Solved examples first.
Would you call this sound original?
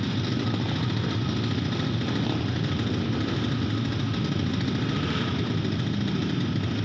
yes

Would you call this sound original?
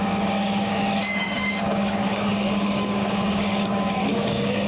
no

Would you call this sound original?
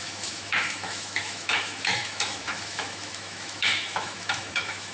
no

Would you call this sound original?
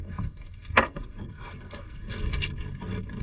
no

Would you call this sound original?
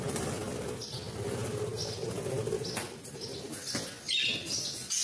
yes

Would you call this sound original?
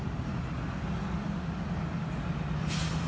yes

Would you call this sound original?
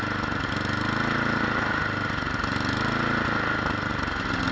yes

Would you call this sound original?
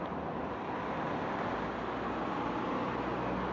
yes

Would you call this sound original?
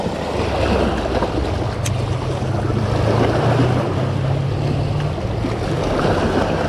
yes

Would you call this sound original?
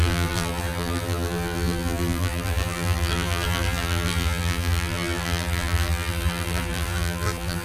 no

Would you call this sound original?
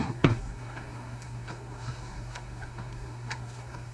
no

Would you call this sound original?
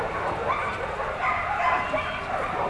no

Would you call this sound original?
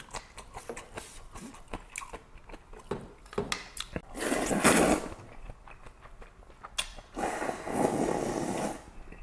yes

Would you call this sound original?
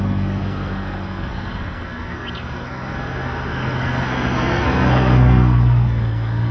no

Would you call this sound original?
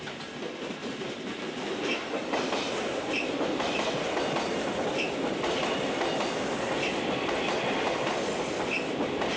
yes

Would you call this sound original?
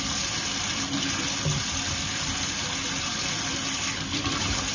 yes